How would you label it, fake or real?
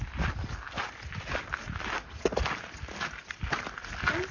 real